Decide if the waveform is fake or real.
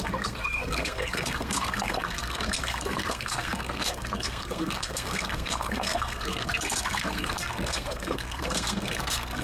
fake